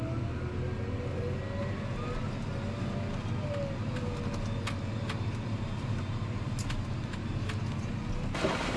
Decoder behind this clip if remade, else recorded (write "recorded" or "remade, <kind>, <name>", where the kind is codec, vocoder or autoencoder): recorded